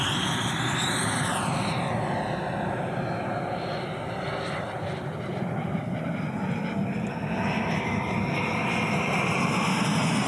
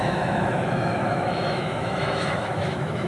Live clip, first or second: first